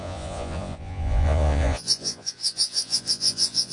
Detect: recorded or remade remade